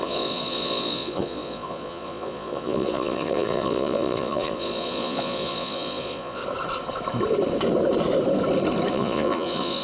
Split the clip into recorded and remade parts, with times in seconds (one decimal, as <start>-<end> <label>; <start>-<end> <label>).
0.0-6.4 remade; 6.4-8.9 recorded; 8.9-9.8 remade